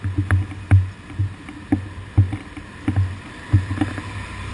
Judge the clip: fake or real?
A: real